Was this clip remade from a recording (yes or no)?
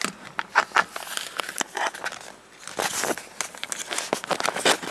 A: no